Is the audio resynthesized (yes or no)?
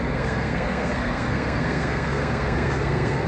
yes